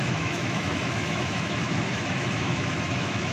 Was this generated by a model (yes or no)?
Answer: yes